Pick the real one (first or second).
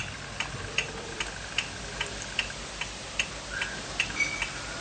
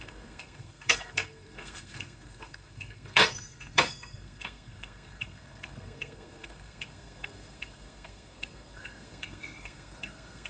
first